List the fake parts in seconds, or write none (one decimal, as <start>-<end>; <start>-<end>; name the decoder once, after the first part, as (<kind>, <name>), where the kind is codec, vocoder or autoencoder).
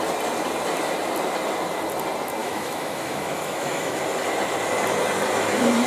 2.4-4.0 (autoencoder, DAC-VAE)